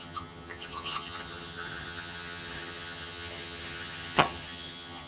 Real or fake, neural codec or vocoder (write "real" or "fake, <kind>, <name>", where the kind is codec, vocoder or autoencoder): fake, vocoder, HiFi-GAN